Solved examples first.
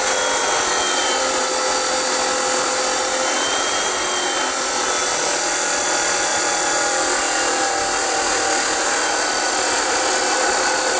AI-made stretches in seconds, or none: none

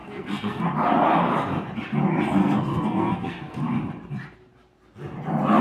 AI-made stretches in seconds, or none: 0.0-0.6 (codec, SNAC); 2.4-3.6

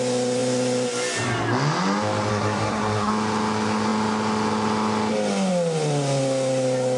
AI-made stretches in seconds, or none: 2.3-3.1 (codec, SNAC)

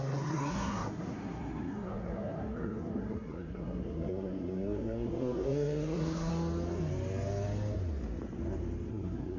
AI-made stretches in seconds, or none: 0.0-6.3 (codec, SNAC); 8.9-9.4

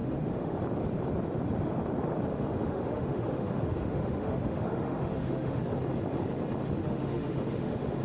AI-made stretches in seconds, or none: 0.0-0.6 (autoencoder, DAC-VAE); 2.3-5.6; 6.8-8.0